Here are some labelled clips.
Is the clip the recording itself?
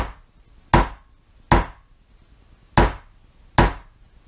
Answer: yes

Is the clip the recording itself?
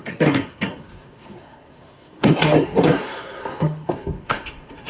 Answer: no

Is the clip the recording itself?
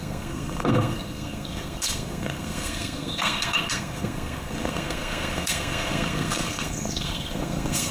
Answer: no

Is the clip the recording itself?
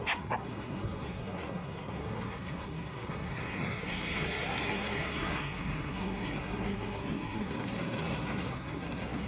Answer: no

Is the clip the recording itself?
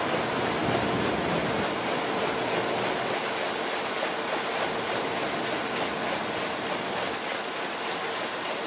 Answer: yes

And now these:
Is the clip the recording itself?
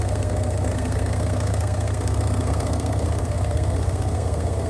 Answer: no